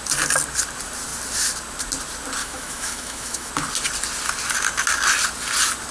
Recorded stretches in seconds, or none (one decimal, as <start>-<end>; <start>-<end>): 0.0-2.4; 3.5-5.9